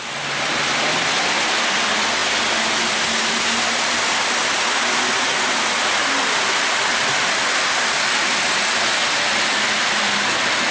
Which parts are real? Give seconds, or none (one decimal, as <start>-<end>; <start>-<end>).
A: 0.0-10.7